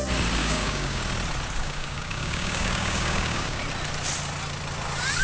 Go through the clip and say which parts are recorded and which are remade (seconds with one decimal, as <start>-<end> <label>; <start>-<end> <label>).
0.0-0.4 recorded; 0.4-1.0 remade; 1.0-1.6 recorded; 1.6-3.6 remade; 3.6-5.2 recorded